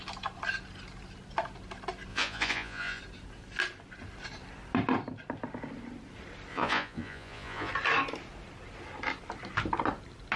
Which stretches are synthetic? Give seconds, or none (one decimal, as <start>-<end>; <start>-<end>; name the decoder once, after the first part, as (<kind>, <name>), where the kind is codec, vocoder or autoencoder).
2.1-3.0 (vocoder, Vocos); 6.5-7.7